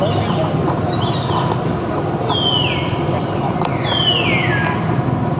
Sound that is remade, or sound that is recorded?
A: recorded